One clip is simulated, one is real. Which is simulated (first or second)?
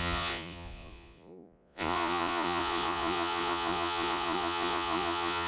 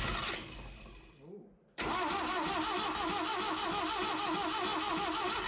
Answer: first